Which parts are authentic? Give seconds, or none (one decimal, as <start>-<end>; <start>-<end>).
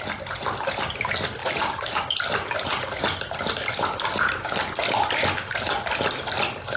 0.0-1.4; 2.0-6.8